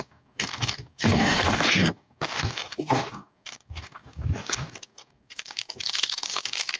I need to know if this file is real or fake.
fake